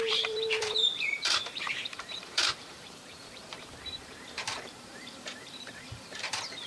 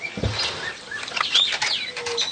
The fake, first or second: first